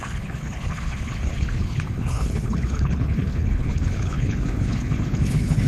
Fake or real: fake